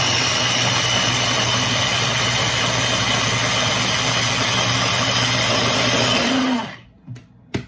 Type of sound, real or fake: real